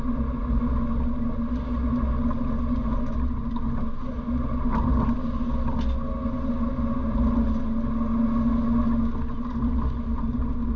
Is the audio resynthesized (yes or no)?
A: no